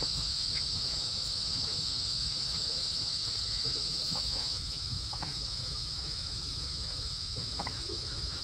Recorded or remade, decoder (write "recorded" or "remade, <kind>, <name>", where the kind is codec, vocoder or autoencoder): remade, autoencoder, DAC-VAE